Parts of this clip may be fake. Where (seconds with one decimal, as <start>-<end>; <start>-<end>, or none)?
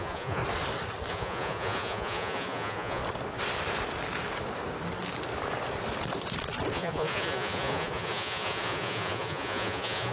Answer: 0.0-0.4; 1.1-3.0; 6.7-10.1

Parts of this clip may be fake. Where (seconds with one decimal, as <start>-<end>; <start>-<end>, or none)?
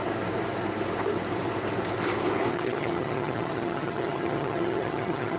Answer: 2.5-5.4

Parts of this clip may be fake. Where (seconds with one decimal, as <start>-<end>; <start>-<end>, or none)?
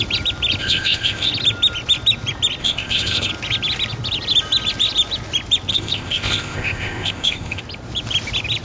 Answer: 0.6-1.3; 2.6-3.3; 5.7-7.6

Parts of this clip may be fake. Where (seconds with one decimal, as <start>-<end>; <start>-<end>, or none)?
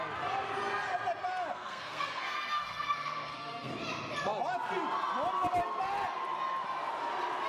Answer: 1.5-3.7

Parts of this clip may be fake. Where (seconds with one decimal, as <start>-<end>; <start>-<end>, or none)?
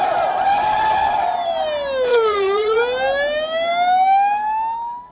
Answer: 2.1-2.8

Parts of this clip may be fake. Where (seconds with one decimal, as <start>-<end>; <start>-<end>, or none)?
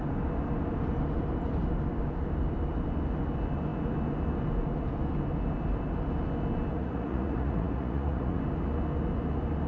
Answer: 6.7-8.4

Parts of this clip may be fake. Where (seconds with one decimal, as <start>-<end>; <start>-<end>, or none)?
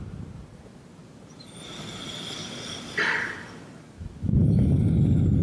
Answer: 0.0-1.9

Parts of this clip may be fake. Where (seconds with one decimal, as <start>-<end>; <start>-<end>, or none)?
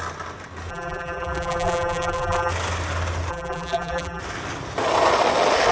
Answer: 0.7-2.5; 3.3-4.2